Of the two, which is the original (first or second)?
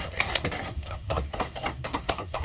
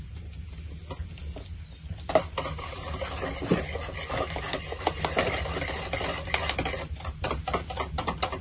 second